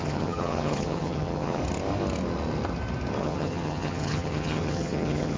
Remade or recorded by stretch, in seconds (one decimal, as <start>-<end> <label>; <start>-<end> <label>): 0.0-1.6 remade; 1.6-3.2 recorded; 3.2-5.4 remade